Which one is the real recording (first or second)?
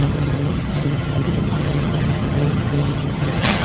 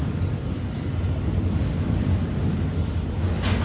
second